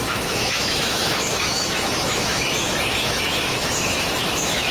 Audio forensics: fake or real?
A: fake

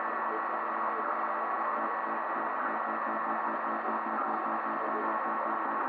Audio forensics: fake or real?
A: real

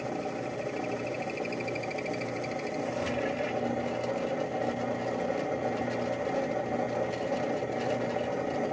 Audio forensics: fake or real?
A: real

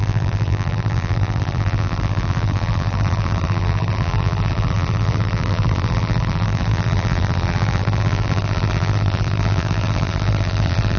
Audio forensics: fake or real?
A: fake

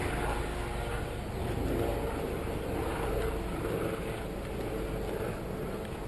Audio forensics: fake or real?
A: real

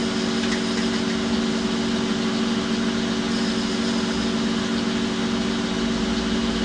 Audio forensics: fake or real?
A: real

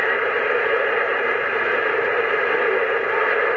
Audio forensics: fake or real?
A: real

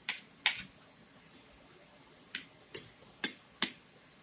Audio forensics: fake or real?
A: real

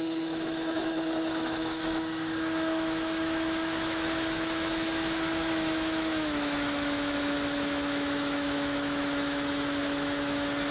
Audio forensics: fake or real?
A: fake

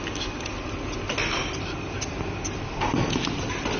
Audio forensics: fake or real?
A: real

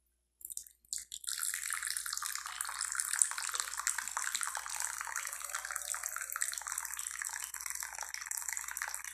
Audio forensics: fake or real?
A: real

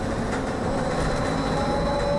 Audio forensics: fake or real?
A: real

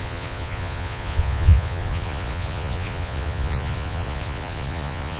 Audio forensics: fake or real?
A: fake